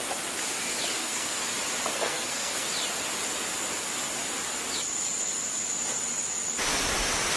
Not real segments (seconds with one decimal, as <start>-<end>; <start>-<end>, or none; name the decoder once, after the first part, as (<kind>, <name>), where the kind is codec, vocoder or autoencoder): 1.0-1.5 (codec, SNAC); 1.9-2.7